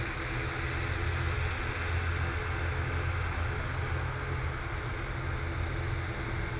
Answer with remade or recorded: recorded